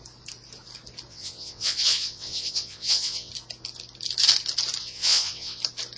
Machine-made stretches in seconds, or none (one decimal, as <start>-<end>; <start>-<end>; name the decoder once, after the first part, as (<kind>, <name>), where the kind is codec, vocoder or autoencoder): 1.1-3.3 (vocoder, WaveNeXt); 4.8-5.6